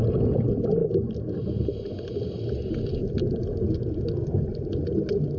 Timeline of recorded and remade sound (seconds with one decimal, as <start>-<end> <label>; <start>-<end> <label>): 0.0-5.4 recorded